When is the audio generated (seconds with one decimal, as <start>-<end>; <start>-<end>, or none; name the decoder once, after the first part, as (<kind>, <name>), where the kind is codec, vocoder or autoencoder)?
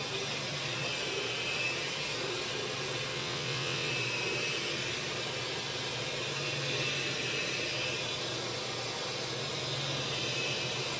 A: 3.1-3.9 (vocoder, WaveNeXt)